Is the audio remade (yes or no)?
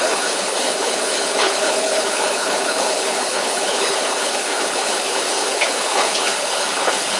yes